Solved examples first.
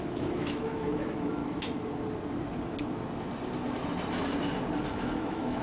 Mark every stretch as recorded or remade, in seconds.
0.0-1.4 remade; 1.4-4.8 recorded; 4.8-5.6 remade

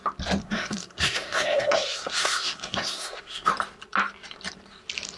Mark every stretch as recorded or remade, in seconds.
0.0-0.4 recorded; 0.4-3.5 remade; 3.5-5.2 recorded

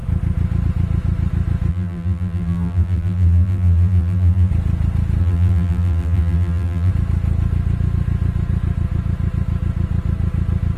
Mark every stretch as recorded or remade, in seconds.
0.0-1.7 recorded; 1.7-4.5 remade; 4.5-5.2 recorded; 5.2-6.9 remade; 6.9-10.8 recorded

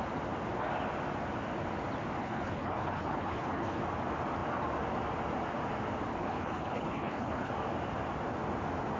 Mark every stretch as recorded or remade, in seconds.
0.0-2.2 recorded; 2.2-3.8 remade; 3.8-6.1 recorded; 6.1-7.5 remade; 7.5-9.0 recorded

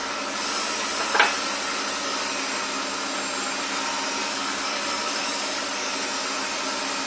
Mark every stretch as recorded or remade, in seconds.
0.0-4.2 recorded; 4.2-5.9 remade; 5.9-7.1 recorded

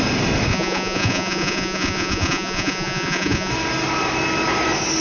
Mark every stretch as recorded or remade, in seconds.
0.0-0.5 recorded; 0.5-3.5 remade; 3.5-5.0 recorded

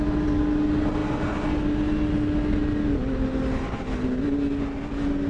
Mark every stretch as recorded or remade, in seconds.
0.0-5.3 recorded